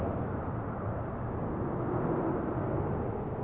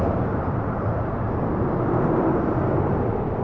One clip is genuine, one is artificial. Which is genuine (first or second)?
first